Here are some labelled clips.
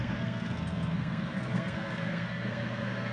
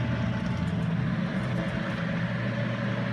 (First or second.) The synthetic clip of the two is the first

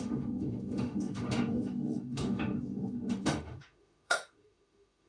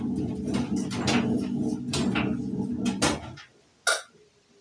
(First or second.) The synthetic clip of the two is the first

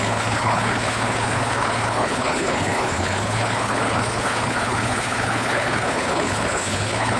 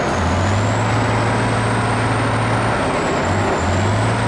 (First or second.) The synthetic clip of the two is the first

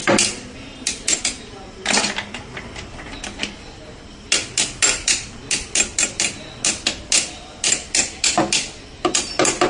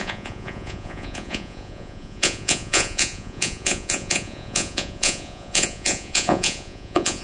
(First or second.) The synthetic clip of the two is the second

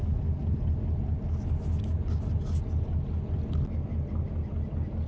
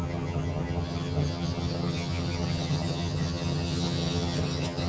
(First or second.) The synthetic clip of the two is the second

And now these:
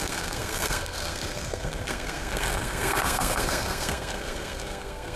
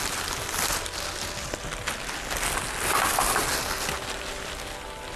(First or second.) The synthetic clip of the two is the first